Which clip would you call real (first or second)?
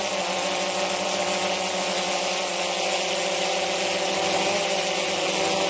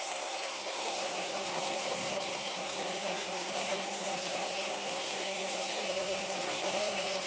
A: first